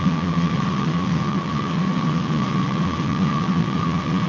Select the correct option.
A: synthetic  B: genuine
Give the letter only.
A